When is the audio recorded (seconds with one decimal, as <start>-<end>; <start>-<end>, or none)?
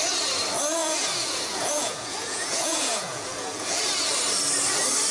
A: 0.0-0.8; 3.8-5.1